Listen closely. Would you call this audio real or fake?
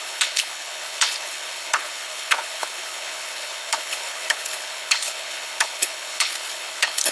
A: fake